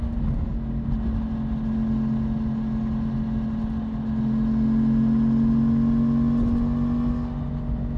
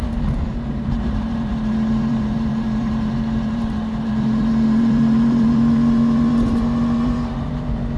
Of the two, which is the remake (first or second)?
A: second